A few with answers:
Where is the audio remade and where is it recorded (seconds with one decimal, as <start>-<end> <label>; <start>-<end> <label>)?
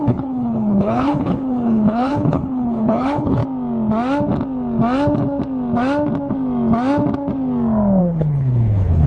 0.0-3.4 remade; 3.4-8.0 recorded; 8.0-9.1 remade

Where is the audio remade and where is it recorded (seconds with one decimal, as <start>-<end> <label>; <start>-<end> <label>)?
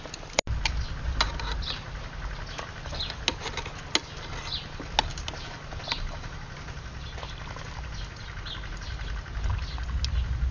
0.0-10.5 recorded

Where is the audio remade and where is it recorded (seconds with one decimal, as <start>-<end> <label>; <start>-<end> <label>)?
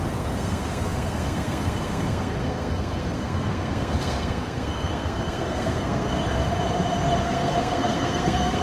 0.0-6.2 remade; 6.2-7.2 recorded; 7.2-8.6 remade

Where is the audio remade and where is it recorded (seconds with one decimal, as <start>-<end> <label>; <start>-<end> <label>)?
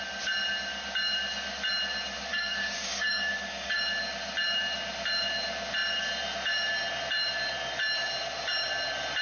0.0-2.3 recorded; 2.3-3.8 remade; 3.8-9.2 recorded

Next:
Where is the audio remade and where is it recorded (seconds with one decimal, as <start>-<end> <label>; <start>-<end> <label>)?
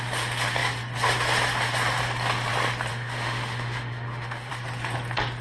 0.0-2.9 recorded; 2.9-4.5 remade; 4.5-5.4 recorded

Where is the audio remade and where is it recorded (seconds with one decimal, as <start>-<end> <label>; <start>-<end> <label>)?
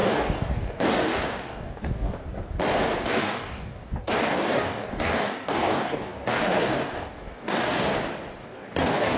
0.0-2.2 remade; 2.2-3.1 recorded; 3.1-7.9 remade; 7.9-8.4 recorded; 8.4-9.2 remade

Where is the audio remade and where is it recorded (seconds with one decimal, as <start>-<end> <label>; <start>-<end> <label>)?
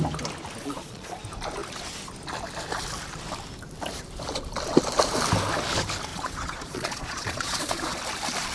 0.0-0.6 recorded; 0.6-1.2 remade; 1.2-6.1 recorded; 6.1-8.0 remade; 8.0-8.5 recorded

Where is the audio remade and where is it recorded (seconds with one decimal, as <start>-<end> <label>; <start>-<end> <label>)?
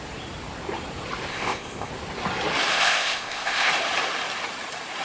0.0-1.3 recorded; 1.3-1.9 remade; 1.9-2.7 recorded; 2.7-3.7 remade; 3.7-5.0 recorded